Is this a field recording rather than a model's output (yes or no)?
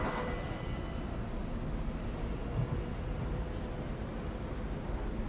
yes